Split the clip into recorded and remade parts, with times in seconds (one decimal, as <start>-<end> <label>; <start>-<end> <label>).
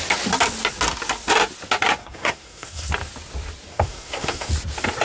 0.0-2.0 recorded; 2.0-2.9 remade; 2.9-3.7 recorded; 3.7-4.5 remade; 4.5-5.0 recorded